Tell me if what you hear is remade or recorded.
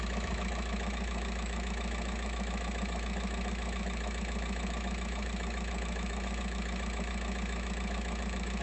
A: remade